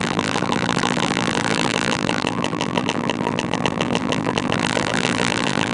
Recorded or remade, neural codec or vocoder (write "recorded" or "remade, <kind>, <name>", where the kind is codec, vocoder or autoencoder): remade, vocoder, BigVGAN v2